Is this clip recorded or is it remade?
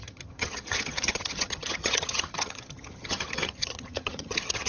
remade